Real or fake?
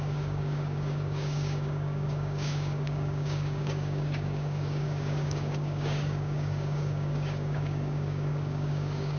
fake